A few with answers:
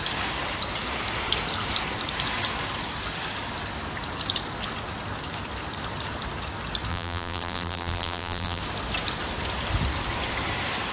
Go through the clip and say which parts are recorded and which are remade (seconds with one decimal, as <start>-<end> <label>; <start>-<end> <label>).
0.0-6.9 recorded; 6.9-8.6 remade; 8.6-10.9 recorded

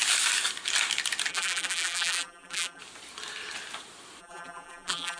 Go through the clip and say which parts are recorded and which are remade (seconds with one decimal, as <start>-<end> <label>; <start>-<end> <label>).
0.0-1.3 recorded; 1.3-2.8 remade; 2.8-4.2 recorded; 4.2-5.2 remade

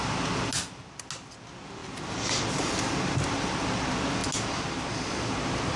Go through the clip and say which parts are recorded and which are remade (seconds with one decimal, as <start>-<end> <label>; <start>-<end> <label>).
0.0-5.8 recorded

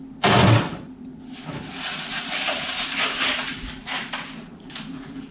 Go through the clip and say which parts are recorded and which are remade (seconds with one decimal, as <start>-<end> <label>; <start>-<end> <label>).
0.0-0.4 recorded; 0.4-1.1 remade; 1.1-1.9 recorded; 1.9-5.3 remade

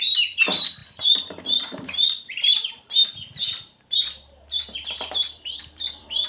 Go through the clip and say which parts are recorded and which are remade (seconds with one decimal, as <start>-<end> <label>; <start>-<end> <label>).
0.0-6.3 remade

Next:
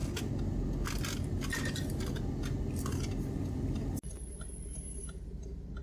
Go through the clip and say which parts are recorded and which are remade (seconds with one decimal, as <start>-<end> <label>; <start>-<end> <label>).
0.0-5.8 recorded

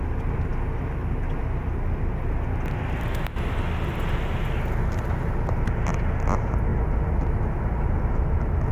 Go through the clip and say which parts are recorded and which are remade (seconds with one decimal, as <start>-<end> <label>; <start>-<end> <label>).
0.0-8.7 recorded

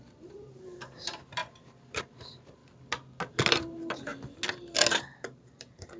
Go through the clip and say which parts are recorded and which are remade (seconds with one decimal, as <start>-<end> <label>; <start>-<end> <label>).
0.0-1.4 remade; 1.4-2.0 recorded; 2.0-2.6 remade; 2.6-3.5 recorded; 3.5-4.1 remade; 4.1-4.9 recorded; 4.9-6.0 remade